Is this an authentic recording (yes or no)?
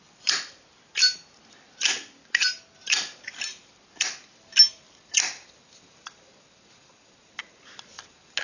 yes